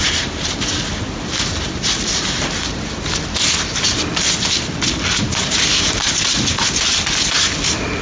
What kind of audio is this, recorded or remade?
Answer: recorded